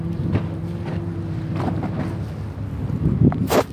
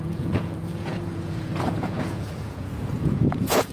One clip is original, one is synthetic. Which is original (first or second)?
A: first